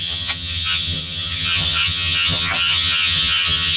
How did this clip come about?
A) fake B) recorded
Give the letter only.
A